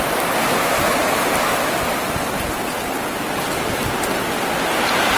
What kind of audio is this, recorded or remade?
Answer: recorded